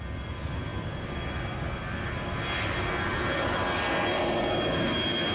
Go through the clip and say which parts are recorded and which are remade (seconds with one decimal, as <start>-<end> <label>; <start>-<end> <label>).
0.0-5.3 recorded